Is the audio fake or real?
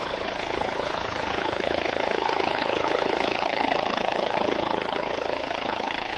fake